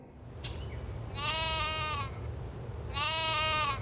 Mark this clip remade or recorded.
recorded